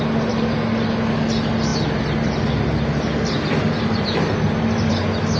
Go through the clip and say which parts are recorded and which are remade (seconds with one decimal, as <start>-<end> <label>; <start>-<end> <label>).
0.0-5.4 recorded